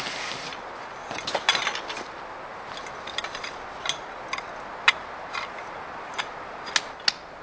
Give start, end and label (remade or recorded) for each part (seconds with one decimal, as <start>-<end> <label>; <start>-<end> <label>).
0.0-7.4 recorded